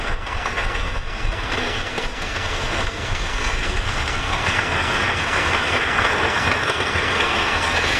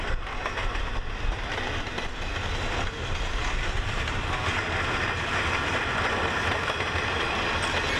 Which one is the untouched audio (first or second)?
second